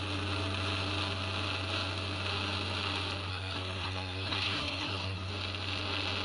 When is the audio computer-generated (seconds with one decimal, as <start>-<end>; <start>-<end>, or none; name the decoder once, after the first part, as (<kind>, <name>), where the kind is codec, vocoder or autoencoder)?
3.3-5.3 (codec, SNAC)

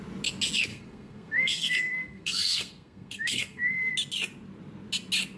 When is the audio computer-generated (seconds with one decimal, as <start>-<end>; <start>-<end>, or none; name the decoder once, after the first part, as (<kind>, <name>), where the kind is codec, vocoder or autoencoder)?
0.7-3.9 (codec, SNAC)

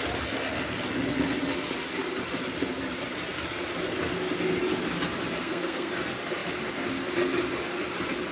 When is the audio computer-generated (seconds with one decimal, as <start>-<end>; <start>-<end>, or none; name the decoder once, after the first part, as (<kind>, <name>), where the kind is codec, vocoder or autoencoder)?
5.4-5.9 (codec, SNAC)

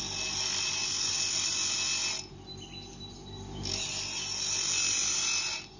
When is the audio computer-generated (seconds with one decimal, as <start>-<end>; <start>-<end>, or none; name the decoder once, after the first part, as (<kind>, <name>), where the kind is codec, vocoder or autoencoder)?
none

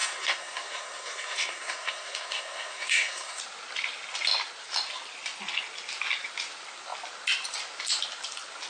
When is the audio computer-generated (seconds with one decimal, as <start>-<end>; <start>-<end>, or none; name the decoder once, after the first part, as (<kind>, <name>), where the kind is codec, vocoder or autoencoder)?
0.0-3.4 (codec, SNAC)

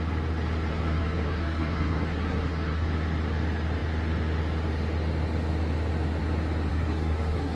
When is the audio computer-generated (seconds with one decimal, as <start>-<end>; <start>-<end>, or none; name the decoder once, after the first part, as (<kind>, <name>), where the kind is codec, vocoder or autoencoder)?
0.7-2.9 (codec, SNAC); 6.7-7.6

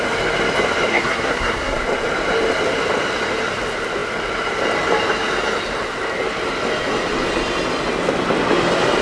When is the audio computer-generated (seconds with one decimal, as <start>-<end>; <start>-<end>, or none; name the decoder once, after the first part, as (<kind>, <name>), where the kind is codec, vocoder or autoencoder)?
0.9-1.8 (codec, SNAC)